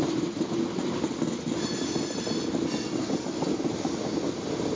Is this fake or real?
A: real